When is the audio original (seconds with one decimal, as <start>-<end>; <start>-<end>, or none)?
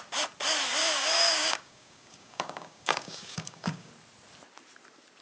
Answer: 0.0-0.8; 3.9-5.2